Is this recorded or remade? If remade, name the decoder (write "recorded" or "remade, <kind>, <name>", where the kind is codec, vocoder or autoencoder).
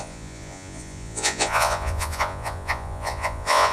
remade, vocoder, Vocos